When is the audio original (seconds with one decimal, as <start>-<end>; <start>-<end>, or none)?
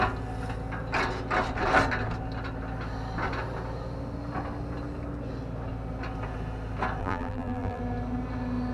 0.0-7.0; 7.8-8.7